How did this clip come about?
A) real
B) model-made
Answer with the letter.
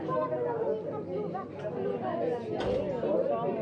A